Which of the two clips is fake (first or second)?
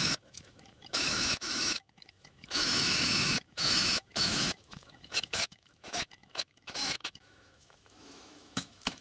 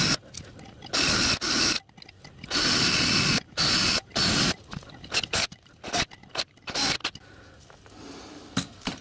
first